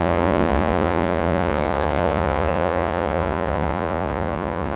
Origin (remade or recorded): remade